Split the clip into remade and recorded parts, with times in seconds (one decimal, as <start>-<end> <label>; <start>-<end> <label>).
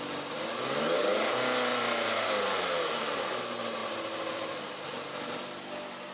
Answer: 0.0-1.7 recorded; 1.7-3.2 remade; 3.2-3.8 recorded; 3.8-5.4 remade; 5.4-6.1 recorded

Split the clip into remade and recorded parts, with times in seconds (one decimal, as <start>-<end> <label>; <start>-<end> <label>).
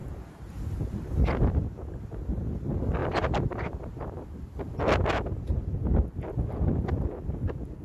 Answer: 0.0-0.5 remade; 0.5-3.0 recorded; 3.0-4.0 remade; 4.0-7.8 recorded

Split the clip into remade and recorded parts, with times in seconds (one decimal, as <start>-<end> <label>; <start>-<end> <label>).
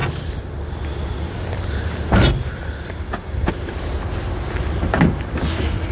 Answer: 0.0-5.9 recorded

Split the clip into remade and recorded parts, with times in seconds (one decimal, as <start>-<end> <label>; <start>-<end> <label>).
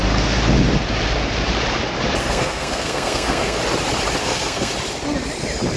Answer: 0.0-2.2 recorded; 2.2-3.6 remade; 3.6-4.2 recorded; 4.2-4.7 remade; 4.7-5.8 recorded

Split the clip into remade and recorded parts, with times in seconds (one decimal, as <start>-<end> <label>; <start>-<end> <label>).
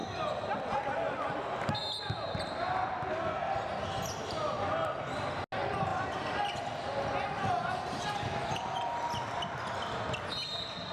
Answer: 0.0-10.9 recorded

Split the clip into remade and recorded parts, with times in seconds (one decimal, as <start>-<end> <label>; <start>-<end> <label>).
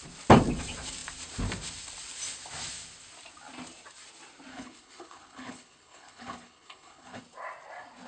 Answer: 0.0-4.5 recorded; 4.5-7.2 remade; 7.2-8.1 recorded